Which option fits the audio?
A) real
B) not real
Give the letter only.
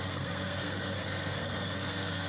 B